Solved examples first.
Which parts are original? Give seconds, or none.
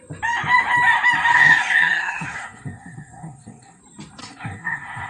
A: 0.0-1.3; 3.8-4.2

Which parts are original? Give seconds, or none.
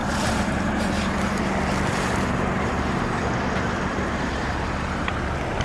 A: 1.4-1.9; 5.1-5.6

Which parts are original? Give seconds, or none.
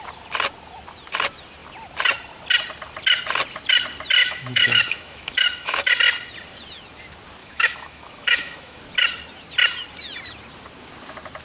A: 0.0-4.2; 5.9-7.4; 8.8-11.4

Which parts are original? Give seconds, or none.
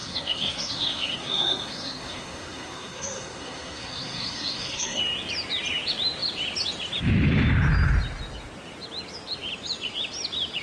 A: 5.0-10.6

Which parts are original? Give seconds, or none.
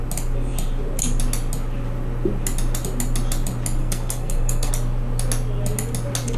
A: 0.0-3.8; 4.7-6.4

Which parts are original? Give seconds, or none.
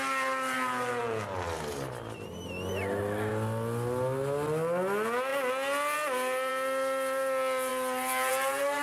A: 0.0-8.8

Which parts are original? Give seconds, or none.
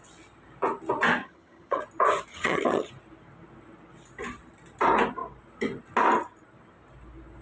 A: 0.0-1.2; 1.8-2.3; 2.9-7.4